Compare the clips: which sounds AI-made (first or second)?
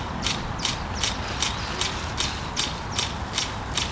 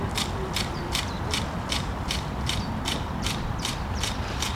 second